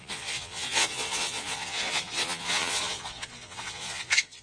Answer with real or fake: fake